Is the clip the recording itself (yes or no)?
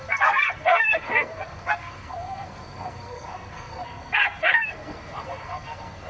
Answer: no